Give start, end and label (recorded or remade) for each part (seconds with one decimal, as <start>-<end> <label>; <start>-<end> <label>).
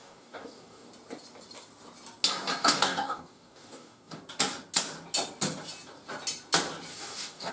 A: 0.0-0.9 remade; 0.9-2.6 recorded; 2.6-4.2 remade; 4.2-6.9 recorded; 6.9-7.5 remade